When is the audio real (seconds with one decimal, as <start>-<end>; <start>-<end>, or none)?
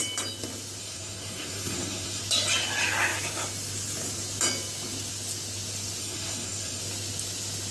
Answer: 0.0-0.8; 2.2-6.0; 6.8-7.7